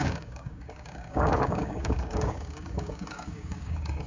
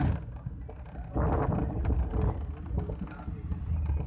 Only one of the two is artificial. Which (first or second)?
first